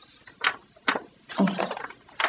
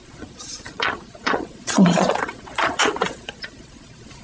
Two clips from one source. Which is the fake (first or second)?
second